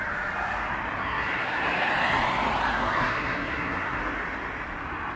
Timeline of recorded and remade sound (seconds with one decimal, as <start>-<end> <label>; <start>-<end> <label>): 0.0-1.0 recorded; 1.0-1.9 remade; 1.9-2.7 recorded; 2.7-4.0 remade; 4.0-5.2 recorded